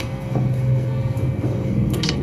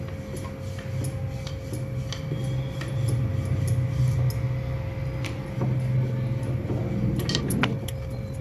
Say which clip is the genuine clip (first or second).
second